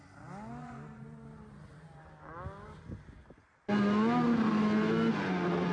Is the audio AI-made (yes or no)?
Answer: no